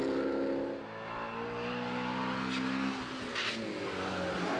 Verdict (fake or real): real